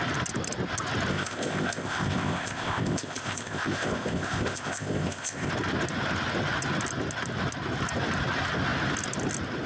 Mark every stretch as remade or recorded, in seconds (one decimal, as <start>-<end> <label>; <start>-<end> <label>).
0.0-1.1 recorded; 1.1-5.5 remade; 5.5-9.7 recorded